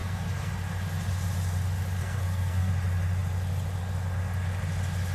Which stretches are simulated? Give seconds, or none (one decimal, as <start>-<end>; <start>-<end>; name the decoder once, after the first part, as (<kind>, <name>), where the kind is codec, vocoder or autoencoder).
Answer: 0.0-0.5 (codec, SNAC); 2.0-2.7